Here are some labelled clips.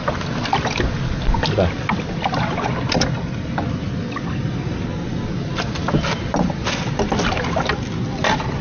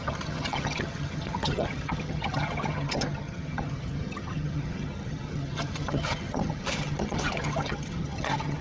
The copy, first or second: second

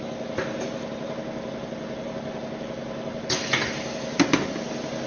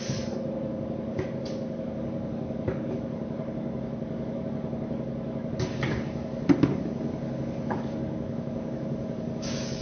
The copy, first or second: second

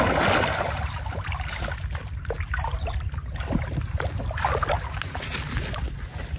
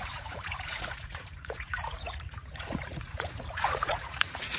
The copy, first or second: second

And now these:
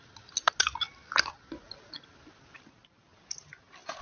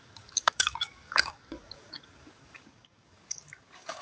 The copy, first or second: second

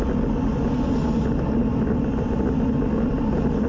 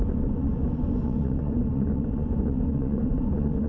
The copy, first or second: second